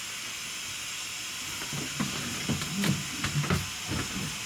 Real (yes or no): yes